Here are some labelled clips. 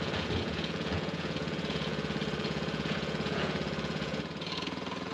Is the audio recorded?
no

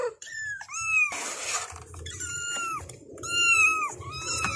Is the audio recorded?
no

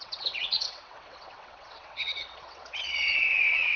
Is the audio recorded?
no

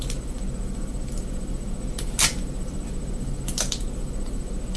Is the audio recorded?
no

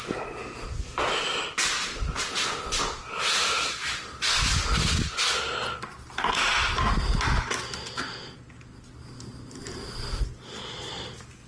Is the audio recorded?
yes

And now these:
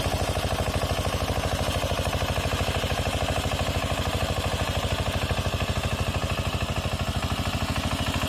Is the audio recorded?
yes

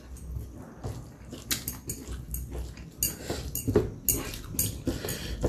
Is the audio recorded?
yes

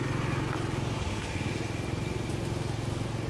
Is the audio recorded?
yes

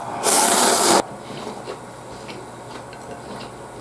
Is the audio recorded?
yes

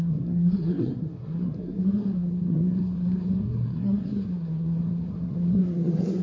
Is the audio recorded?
no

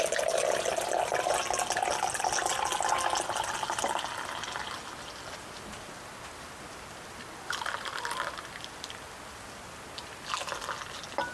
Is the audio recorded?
yes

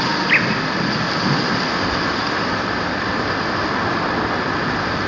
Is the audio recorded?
yes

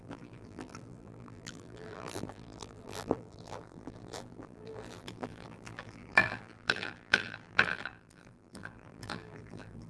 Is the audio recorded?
no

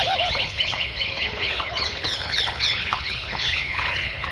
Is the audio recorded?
no